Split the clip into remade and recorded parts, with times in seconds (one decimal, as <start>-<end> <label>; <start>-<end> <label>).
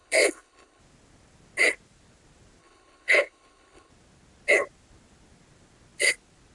0.0-0.8 remade; 0.8-2.6 recorded; 2.6-3.9 remade; 3.9-6.5 recorded